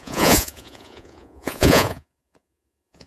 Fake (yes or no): yes